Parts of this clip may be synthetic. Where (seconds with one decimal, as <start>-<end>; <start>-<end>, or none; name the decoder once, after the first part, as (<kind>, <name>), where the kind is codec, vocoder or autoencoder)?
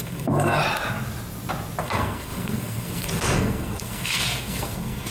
0.0-0.6 (codec, SNAC); 1.8-5.1